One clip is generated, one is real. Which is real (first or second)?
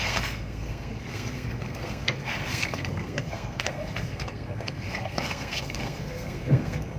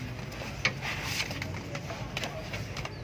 second